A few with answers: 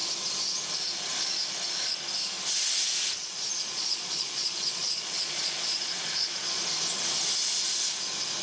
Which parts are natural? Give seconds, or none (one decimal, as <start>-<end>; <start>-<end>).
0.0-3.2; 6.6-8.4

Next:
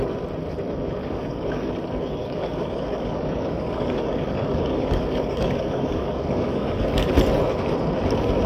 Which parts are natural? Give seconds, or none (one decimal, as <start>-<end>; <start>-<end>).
0.0-1.0; 1.7-2.2; 7.1-8.5

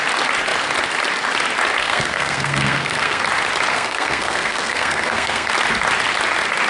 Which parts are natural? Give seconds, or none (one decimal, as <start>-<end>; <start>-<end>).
0.0-1.8; 3.2-3.7; 5.5-6.7

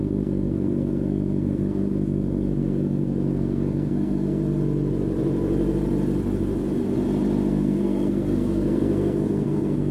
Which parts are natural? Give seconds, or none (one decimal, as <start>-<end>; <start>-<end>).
4.4-7.5